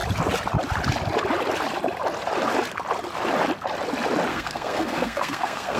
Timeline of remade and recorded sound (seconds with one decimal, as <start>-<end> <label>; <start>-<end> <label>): 0.0-4.3 recorded; 4.3-5.8 remade